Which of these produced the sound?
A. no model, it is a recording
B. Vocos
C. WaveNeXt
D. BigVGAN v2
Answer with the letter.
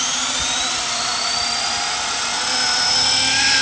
A